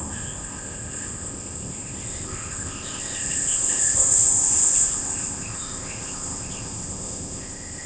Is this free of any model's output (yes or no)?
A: no